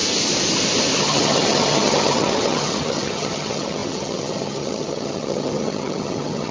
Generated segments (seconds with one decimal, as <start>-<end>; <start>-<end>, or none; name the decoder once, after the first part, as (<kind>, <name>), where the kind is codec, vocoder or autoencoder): 1.0-6.5 (vocoder, HiFi-GAN)